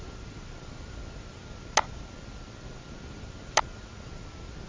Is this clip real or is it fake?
real